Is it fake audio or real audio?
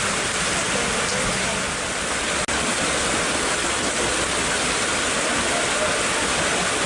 real